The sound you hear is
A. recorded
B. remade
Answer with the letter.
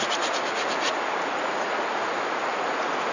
B